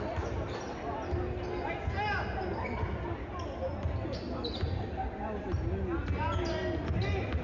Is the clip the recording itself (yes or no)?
yes